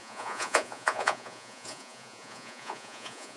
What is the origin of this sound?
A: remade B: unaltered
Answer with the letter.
A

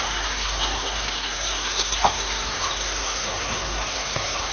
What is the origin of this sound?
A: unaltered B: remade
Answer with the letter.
B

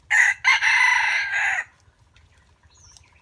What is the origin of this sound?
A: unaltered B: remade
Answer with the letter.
A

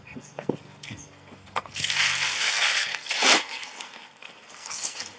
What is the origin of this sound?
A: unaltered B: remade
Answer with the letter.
B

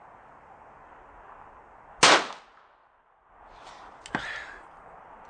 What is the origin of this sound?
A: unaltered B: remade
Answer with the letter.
A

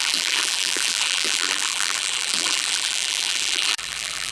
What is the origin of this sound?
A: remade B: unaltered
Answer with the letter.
A